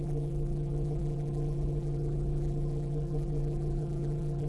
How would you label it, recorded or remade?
remade